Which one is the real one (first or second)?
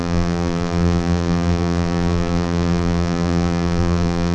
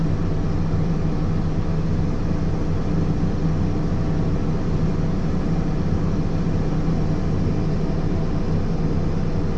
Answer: second